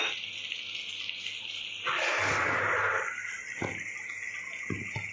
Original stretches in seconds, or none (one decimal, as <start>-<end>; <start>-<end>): 0.0-5.1